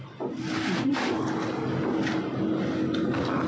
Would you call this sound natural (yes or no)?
yes